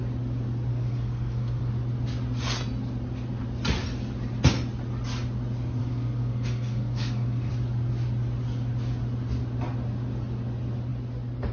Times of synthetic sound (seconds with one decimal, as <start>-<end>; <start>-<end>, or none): 0.7-1.7; 5.8-7.5